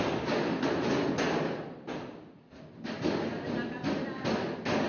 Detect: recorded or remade recorded